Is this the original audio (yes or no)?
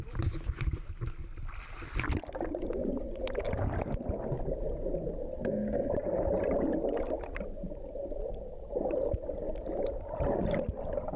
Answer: yes